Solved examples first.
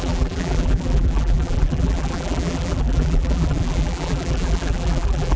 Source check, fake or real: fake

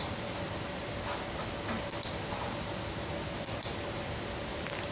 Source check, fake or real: real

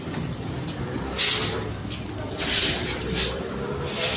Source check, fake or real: fake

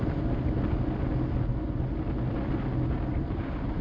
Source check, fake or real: real